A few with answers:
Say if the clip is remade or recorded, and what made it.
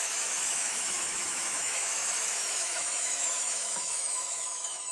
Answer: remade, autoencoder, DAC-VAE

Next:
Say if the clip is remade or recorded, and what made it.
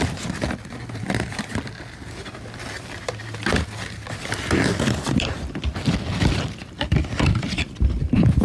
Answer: recorded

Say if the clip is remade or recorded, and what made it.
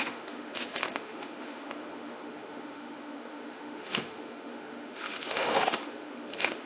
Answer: remade, autoencoder, DAC-VAE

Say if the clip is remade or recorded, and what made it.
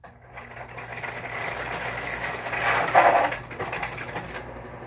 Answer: recorded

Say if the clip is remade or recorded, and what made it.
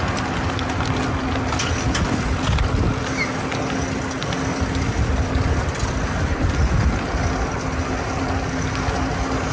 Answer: recorded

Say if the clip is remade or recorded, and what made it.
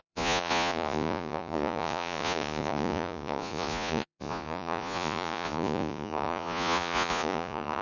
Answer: remade, vocoder, Vocos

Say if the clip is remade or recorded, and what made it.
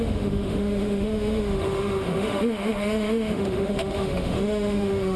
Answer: remade, autoencoder, DAC-VAE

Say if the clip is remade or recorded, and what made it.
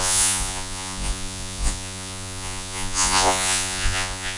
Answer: remade, vocoder, Vocos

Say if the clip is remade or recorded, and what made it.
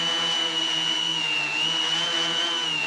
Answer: remade, vocoder, Vocos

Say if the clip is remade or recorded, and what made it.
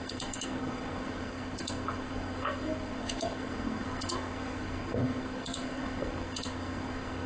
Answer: remade, codec, SNAC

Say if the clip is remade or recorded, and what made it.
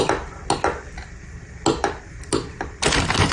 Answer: recorded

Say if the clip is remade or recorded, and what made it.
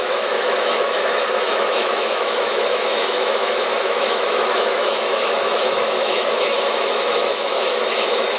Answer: remade, autoencoder, DAC-VAE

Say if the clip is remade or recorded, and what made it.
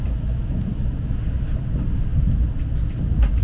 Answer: recorded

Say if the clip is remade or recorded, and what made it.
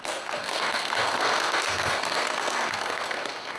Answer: remade, codec, SNAC